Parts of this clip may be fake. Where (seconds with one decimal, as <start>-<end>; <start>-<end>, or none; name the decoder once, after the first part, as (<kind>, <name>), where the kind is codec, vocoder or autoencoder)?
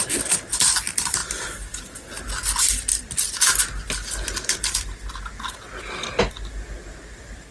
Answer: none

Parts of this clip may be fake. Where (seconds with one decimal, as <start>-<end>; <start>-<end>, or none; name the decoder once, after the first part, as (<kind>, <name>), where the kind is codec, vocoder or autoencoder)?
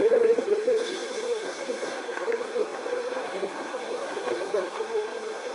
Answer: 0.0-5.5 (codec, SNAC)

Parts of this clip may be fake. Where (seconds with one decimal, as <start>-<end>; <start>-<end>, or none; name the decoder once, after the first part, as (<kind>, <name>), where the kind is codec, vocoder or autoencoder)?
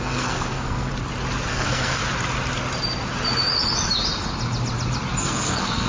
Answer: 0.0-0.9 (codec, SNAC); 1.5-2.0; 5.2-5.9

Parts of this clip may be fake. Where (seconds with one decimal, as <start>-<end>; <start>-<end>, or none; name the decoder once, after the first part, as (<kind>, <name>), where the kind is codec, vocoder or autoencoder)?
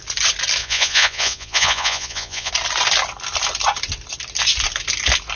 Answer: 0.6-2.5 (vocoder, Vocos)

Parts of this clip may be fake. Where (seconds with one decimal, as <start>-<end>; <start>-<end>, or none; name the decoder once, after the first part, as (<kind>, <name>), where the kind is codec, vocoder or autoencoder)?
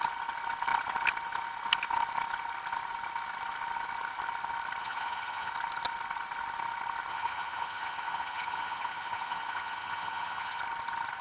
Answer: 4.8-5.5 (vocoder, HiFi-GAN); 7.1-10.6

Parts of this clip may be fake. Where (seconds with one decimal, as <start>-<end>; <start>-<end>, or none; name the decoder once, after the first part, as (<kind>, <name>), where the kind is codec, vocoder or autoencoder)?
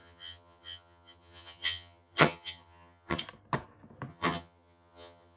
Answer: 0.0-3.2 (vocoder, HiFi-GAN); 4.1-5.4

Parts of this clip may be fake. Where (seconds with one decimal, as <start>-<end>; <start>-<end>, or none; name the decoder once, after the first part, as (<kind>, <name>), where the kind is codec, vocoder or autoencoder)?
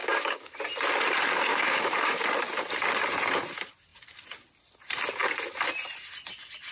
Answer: 0.0-0.5 (codec, DAC); 1.5-2.2